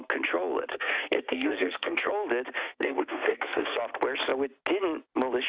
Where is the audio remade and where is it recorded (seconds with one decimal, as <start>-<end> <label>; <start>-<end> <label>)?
0.0-0.7 recorded; 0.7-2.1 remade; 2.1-2.6 recorded; 2.6-3.8 remade; 3.8-5.5 recorded